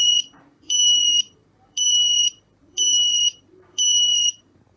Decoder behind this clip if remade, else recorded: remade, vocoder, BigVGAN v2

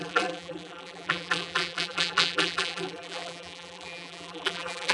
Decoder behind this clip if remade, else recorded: remade, vocoder, BigVGAN v2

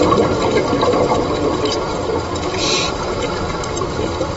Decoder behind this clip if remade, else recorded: remade, vocoder, BigVGAN v2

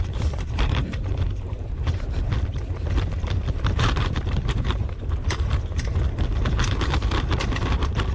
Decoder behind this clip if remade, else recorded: remade, vocoder, BigVGAN v2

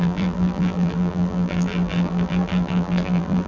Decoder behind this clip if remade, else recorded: remade, vocoder, BigVGAN v2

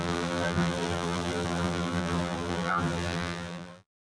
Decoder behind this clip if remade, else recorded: remade, vocoder, BigVGAN v2